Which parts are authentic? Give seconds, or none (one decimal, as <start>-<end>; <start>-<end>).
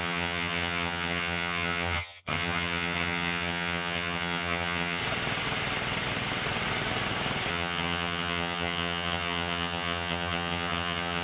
5.0-7.5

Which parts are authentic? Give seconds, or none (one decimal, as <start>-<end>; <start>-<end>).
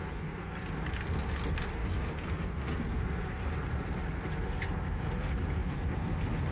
0.0-6.5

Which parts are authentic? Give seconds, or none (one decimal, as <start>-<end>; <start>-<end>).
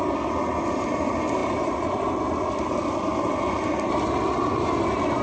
0.0-5.2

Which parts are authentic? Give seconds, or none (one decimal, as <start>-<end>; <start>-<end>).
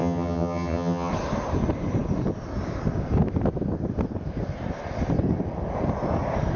1.1-6.6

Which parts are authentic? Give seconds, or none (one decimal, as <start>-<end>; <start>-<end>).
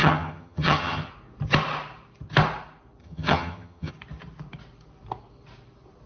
1.1-3.0; 3.9-6.1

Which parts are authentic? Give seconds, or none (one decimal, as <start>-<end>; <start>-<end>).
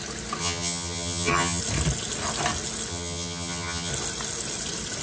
0.0-0.4; 1.6-2.9; 3.9-5.0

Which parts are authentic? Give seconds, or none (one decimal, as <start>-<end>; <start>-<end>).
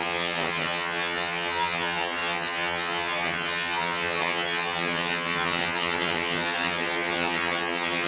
none